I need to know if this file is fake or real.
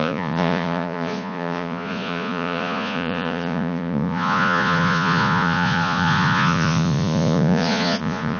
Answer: fake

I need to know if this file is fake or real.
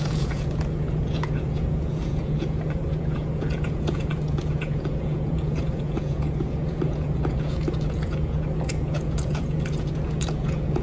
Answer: fake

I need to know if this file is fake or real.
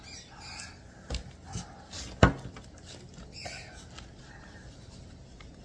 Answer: real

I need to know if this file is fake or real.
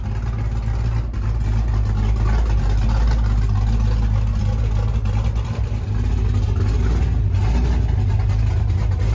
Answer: real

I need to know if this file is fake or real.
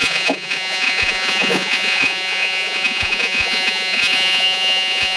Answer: fake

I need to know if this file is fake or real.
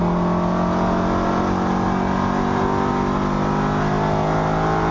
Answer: real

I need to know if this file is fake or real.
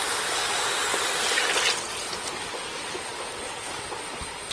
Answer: real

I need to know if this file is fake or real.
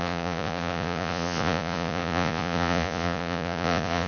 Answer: fake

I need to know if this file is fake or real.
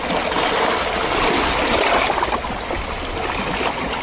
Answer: real